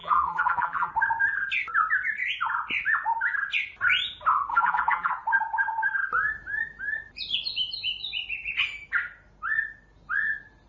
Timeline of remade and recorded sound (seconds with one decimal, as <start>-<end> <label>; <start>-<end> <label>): 0.0-0.9 remade; 0.9-4.5 recorded; 4.5-5.1 remade; 5.1-10.7 recorded